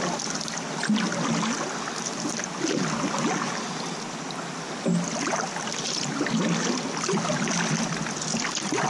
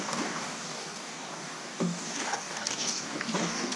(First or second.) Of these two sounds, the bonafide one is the first